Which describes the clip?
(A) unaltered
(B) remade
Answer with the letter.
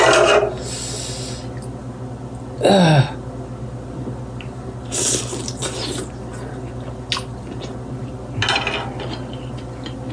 A